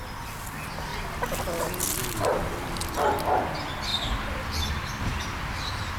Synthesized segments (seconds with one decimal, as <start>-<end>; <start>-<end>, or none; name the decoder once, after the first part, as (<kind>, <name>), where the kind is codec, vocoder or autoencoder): none